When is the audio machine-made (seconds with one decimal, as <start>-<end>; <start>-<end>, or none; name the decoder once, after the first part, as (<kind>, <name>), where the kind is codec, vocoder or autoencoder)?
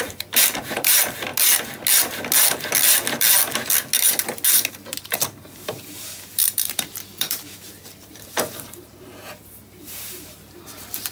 0.0-1.3 (vocoder, BigVGAN v2); 4.7-11.1